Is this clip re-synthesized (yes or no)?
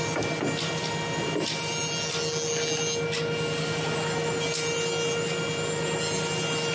no